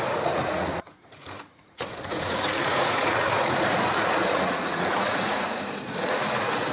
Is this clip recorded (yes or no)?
no